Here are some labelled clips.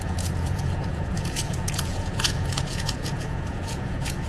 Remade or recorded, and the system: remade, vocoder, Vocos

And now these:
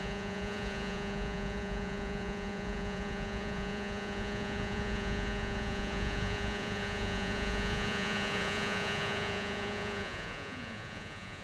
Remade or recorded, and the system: remade, vocoder, Vocos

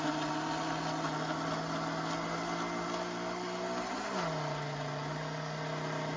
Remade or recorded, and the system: recorded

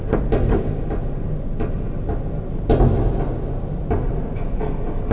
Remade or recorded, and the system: recorded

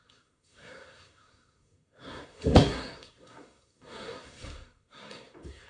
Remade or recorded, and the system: remade, codec, SNAC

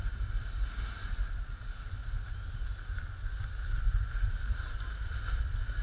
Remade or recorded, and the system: recorded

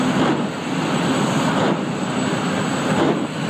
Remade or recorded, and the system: recorded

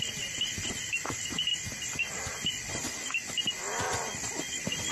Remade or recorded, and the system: recorded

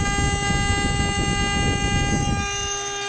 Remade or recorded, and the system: recorded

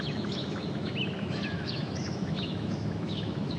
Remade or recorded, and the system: remade, autoencoder, DAC-VAE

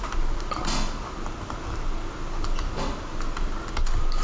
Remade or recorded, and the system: recorded